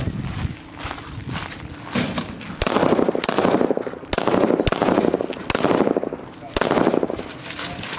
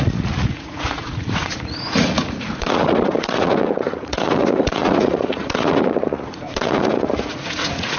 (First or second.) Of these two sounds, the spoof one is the second